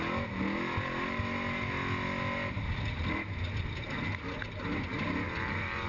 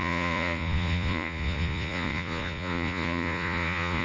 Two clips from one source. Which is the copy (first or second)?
second